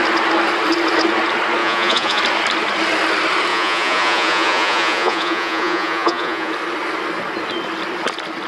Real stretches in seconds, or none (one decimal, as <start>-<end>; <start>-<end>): 0.0-1.6; 2.2-3.5; 6.5-8.5